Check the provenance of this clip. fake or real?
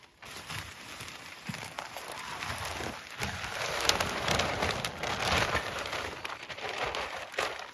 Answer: real